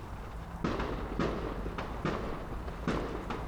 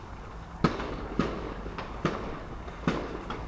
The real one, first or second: first